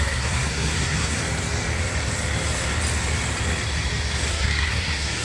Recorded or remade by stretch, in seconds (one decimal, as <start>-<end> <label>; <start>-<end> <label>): 0.0-1.2 remade; 1.2-4.3 recorded; 4.3-5.2 remade